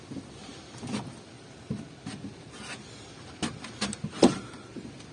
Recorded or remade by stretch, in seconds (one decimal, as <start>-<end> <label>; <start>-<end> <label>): 0.0-5.1 recorded